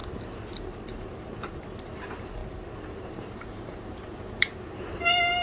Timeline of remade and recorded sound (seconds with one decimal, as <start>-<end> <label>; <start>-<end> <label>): 0.0-0.6 recorded; 0.6-2.4 remade; 2.4-3.1 recorded; 3.1-5.4 remade